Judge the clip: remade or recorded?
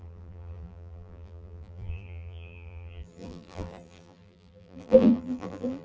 remade